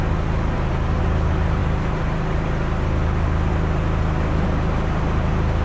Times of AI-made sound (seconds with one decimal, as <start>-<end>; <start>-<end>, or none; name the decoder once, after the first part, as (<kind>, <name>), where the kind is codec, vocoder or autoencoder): none